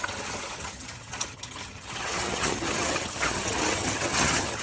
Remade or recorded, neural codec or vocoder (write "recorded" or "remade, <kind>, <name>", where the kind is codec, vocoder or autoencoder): remade, vocoder, HiFi-GAN